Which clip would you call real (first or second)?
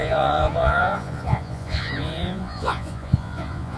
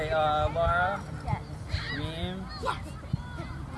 second